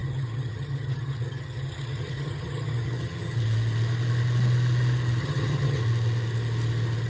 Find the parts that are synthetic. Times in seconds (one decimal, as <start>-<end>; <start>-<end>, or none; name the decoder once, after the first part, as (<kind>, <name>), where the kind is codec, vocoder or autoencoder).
0.0-3.4 (vocoder, HiFi-GAN); 5.2-5.8